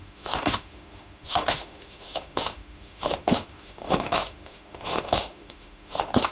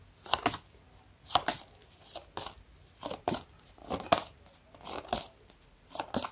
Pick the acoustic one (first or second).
second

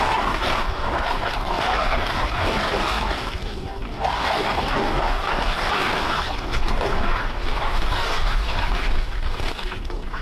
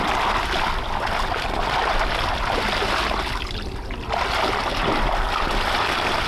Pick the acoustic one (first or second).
second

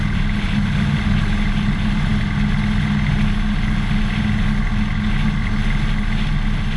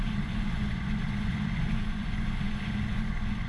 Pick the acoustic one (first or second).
first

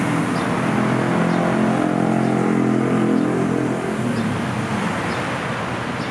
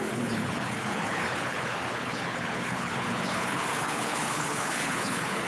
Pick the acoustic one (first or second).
first